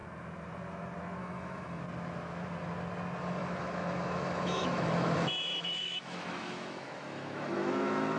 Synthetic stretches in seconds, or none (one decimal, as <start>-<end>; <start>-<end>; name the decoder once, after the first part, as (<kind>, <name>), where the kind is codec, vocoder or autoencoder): 1.2-1.8 (autoencoder, DAC-VAE); 3.4-8.2